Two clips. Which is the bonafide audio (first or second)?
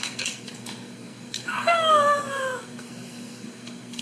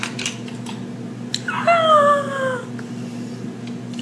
second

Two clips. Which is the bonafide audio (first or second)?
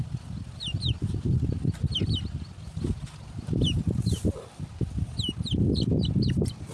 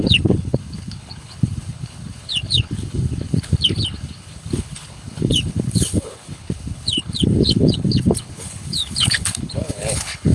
first